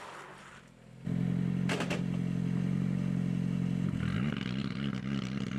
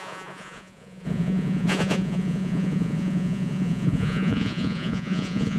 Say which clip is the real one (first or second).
first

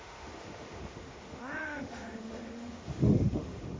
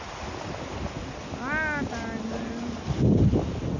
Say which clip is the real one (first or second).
second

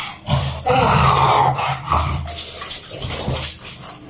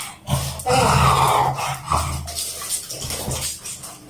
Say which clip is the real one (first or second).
second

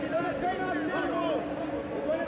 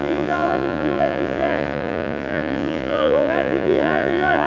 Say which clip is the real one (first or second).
first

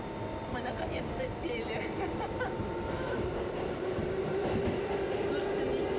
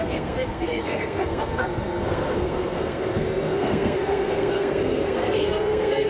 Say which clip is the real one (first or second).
first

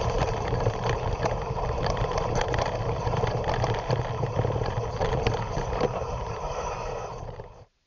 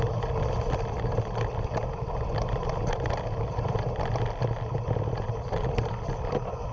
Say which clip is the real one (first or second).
second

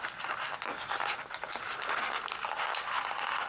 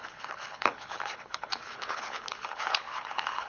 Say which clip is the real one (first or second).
first